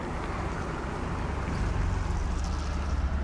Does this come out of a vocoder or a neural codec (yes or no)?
no